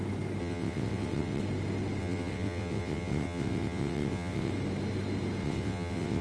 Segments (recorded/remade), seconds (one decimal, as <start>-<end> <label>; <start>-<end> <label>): 0.0-0.4 recorded; 0.4-1.4 remade; 1.4-2.0 recorded; 2.0-4.5 remade; 4.5-5.4 recorded; 5.4-6.2 remade